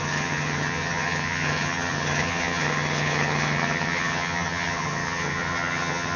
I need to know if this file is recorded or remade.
remade